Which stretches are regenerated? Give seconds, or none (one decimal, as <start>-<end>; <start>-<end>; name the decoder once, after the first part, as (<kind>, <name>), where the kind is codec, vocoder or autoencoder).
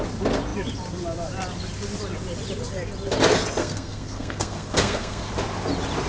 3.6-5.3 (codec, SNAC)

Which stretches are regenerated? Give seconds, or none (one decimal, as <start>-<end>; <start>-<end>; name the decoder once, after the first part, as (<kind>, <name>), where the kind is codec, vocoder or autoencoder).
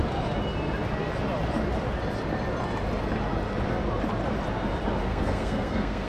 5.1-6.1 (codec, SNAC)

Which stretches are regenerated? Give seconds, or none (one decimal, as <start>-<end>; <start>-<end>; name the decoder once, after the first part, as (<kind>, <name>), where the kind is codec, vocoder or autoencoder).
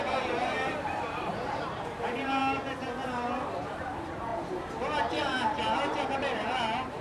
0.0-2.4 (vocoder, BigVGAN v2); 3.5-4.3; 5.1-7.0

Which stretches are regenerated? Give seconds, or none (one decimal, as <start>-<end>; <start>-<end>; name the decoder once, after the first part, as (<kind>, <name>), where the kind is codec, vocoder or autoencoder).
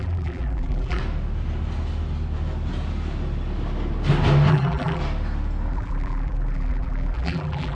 0.0-1.0 (vocoder, BigVGAN v2); 4.5-5.0; 5.7-7.7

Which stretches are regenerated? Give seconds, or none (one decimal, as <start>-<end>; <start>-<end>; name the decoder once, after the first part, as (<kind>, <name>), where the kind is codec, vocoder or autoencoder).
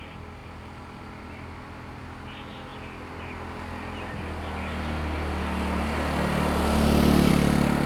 none